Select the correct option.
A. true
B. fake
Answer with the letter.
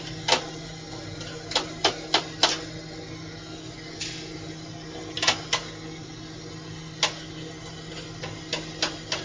A